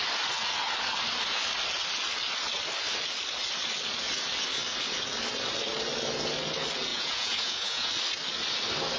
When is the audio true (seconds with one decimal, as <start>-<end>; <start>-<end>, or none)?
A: 0.0-6.9; 7.9-9.0